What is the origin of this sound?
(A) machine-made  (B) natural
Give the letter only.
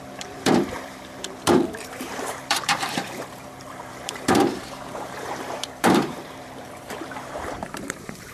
A